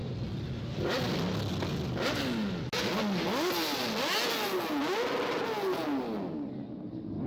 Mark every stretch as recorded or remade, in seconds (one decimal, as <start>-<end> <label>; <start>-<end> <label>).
0.0-7.3 recorded